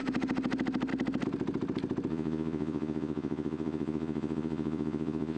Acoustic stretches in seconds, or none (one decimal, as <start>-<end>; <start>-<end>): 0.0-2.1